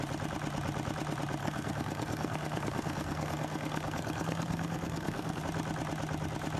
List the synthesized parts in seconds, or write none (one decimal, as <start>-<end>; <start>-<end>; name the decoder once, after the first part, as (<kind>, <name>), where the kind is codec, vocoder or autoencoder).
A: 1.4-5.4 (codec, SNAC)